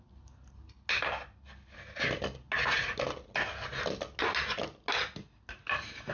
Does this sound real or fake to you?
real